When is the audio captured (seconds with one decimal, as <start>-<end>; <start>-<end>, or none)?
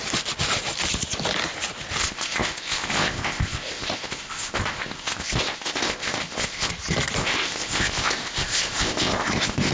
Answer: 0.0-2.0; 6.7-7.2